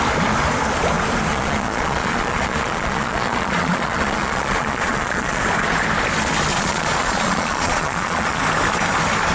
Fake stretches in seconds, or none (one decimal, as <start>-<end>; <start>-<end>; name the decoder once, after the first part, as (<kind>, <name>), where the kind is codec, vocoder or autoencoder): 1.3-5.4 (vocoder, Vocos); 6.5-8.4